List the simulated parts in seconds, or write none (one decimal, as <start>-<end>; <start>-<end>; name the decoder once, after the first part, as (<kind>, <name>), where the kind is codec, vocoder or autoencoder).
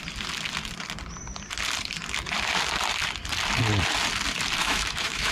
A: 4.6-5.3 (autoencoder, DAC-VAE)